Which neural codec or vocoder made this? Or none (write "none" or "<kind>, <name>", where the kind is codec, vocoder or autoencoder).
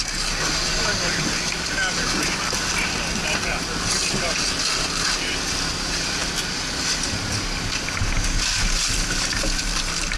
none